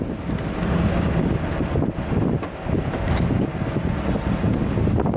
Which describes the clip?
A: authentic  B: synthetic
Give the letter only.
A